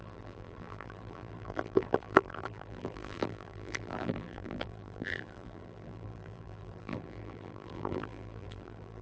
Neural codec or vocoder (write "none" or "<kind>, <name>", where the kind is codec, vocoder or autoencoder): vocoder, BigVGAN v2